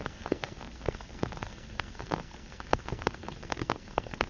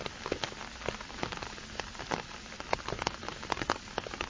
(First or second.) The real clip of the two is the second